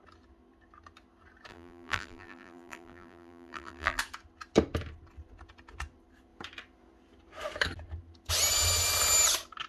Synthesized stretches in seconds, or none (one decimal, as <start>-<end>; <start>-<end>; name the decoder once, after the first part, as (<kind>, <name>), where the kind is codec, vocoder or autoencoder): 1.5-4.0 (vocoder, BigVGAN v2)

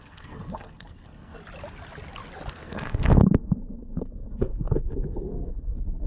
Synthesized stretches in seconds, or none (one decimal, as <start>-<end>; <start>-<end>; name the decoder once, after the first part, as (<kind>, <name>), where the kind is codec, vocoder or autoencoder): 0.0-1.4 (codec, SNAC); 2.5-6.1

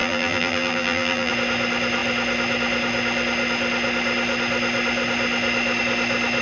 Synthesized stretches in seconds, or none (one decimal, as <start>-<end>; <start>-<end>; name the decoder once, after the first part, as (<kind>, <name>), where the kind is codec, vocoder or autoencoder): 0.0-1.3 (vocoder, BigVGAN v2)

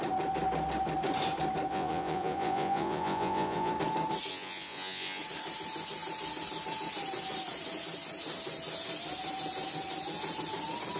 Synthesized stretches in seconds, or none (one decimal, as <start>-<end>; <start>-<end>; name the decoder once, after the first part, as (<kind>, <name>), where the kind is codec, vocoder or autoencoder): 1.7-3.7 (vocoder, Vocos); 4.3-5.2

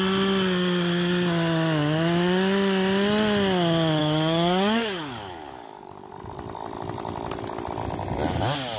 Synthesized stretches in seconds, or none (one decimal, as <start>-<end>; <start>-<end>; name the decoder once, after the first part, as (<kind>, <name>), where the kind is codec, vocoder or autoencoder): 4.0-6.1 (codec, DAC)

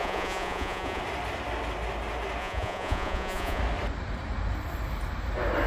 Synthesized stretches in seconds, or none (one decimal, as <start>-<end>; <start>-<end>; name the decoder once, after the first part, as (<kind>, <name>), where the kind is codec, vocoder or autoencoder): 0.0-1.0 (vocoder, Vocos); 2.4-3.6